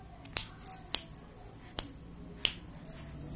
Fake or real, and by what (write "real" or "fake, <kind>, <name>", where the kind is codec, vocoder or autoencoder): real